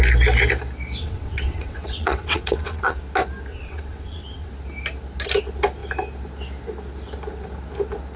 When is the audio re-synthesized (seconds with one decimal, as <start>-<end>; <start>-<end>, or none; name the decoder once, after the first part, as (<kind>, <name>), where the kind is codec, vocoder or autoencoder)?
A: 1.0-3.0 (vocoder, WaveNeXt); 3.5-4.5